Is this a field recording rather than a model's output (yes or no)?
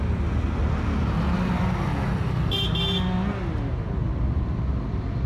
yes